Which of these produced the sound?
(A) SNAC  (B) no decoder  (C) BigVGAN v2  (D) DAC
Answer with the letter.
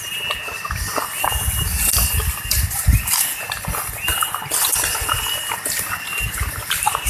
B